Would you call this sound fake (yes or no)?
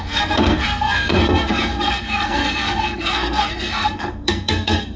yes